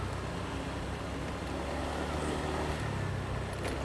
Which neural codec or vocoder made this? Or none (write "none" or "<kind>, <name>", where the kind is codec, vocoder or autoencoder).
none